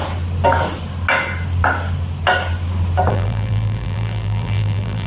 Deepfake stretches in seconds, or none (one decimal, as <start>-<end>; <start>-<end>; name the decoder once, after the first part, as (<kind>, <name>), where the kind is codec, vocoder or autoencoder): 3.1-5.1 (vocoder, BigVGAN v2)